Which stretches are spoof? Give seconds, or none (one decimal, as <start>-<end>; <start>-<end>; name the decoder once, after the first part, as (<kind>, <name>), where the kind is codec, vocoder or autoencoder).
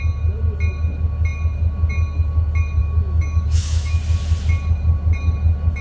2.8-4.0 (autoencoder, DAC-VAE)